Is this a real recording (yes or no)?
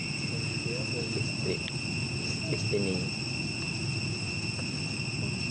yes